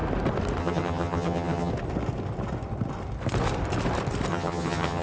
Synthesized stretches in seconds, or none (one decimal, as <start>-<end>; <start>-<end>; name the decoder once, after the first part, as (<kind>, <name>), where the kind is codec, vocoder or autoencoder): 0.6-1.7 (vocoder, HiFi-GAN); 4.3-5.0